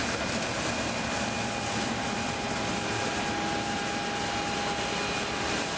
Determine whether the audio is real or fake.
real